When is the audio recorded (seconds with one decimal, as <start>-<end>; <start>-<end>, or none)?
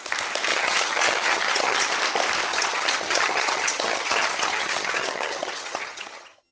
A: 0.0-0.5; 1.9-2.5